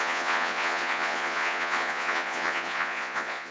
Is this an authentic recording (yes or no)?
no